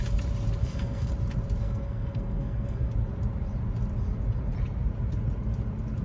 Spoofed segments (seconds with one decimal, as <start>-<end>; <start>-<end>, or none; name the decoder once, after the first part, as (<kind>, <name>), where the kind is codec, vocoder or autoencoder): 0.6-1.1 (codec, SNAC); 1.6-2.9